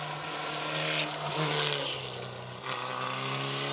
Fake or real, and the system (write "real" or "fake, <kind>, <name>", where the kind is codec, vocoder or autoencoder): real